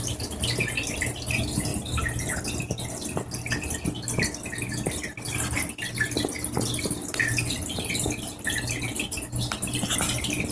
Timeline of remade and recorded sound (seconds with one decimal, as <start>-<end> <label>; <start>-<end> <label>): 0.0-10.5 recorded